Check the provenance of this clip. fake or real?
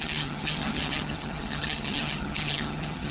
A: fake